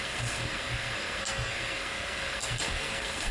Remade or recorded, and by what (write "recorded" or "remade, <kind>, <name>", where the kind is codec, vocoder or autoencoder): remade, codec, SNAC